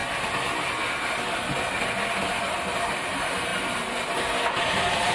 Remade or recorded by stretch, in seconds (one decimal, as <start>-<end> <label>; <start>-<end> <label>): 0.0-2.9 recorded; 2.9-3.5 remade; 3.5-4.6 recorded; 4.6-5.1 remade